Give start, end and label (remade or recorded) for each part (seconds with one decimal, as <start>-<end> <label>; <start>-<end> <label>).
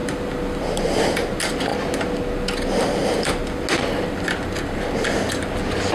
0.0-5.9 recorded